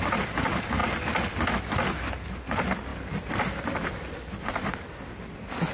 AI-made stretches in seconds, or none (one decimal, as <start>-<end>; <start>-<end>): none